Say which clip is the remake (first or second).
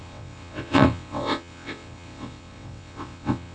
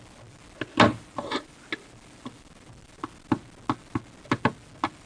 first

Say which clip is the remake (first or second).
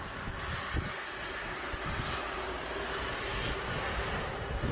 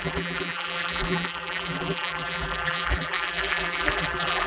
second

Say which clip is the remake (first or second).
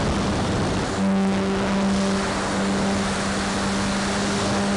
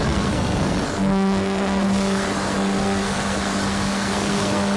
second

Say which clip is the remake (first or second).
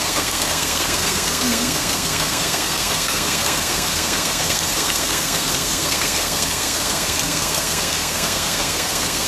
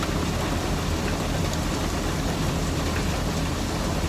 first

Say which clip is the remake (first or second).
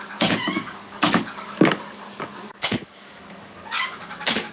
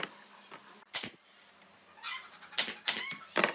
first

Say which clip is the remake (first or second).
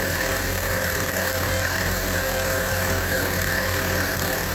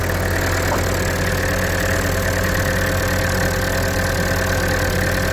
first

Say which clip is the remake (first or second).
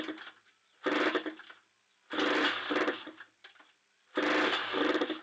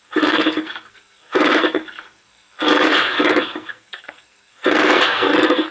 second